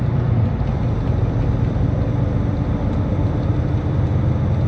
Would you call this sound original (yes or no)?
yes